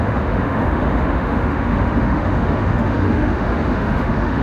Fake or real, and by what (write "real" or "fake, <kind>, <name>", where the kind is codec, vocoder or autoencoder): fake, autoencoder, DAC-VAE